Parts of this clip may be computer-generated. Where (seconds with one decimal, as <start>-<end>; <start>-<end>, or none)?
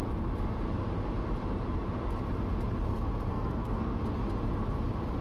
3.3-4.0